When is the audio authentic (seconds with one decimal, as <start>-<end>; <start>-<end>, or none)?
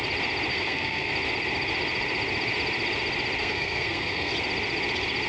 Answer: 0.0-0.5; 1.1-3.4; 4.3-5.3